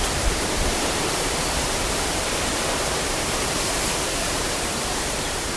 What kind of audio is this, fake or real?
fake